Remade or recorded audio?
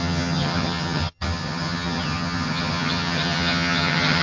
remade